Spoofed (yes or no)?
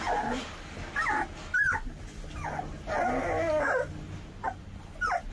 no